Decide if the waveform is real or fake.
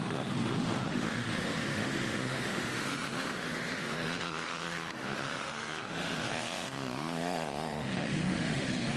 fake